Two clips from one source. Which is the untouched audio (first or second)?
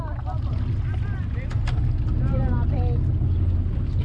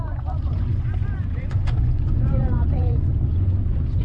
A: first